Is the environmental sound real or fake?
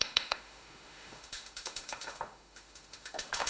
fake